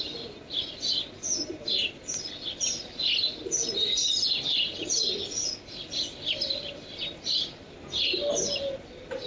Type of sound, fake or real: real